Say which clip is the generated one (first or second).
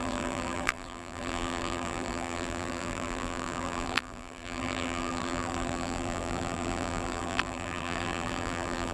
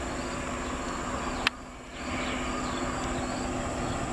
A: first